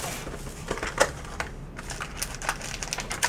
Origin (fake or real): real